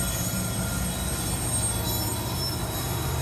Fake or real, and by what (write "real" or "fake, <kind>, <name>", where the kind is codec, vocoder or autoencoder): real